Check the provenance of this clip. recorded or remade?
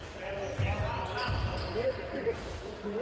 recorded